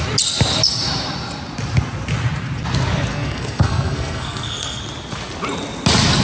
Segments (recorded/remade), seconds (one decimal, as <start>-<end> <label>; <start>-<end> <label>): 0.0-3.1 recorded; 3.1-4.8 remade; 4.8-6.2 recorded